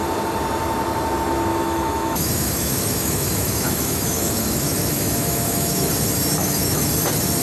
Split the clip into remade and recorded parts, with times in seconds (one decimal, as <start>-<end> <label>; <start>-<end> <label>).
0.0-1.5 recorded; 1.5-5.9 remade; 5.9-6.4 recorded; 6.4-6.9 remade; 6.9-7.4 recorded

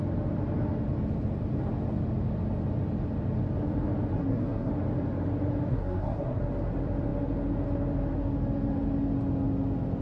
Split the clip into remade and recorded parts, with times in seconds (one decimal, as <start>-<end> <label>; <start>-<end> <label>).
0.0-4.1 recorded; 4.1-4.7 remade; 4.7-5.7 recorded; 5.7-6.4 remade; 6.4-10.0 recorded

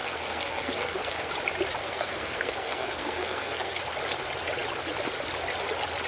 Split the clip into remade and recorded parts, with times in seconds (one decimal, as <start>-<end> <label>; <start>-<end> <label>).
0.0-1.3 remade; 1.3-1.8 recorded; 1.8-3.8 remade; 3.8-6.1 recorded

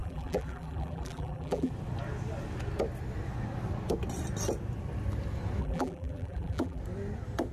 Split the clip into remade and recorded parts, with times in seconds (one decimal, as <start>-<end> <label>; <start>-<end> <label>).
0.0-1.7 remade; 1.7-5.6 recorded; 5.6-6.8 remade; 6.8-7.5 recorded